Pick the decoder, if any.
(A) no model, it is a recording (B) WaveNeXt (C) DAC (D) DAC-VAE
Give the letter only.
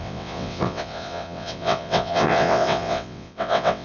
B